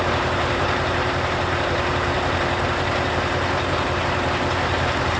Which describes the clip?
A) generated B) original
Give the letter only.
A